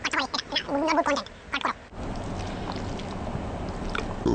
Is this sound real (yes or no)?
yes